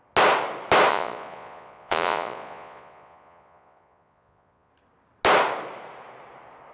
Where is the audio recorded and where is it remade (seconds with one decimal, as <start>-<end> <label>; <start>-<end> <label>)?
0.0-0.9 recorded; 0.9-4.7 remade; 4.7-6.7 recorded